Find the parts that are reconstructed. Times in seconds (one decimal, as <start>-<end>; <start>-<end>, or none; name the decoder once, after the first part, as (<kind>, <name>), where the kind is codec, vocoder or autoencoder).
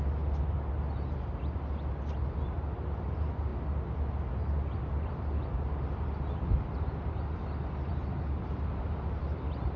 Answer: none